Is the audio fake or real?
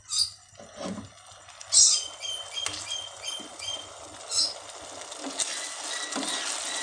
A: real